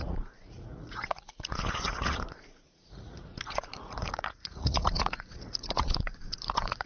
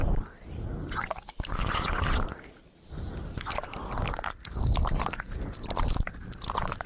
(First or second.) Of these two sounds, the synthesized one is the first